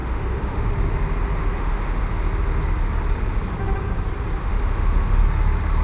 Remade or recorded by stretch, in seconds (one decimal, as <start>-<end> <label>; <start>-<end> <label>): 0.0-0.7 remade; 0.7-1.4 recorded; 1.4-2.0 remade; 2.0-4.4 recorded; 4.4-5.2 remade; 5.2-5.8 recorded